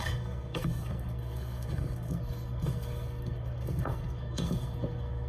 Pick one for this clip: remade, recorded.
remade